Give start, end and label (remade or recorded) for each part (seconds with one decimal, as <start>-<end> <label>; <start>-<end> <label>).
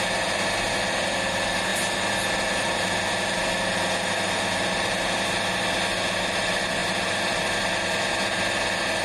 0.0-6.8 recorded; 6.8-7.4 remade; 7.4-9.0 recorded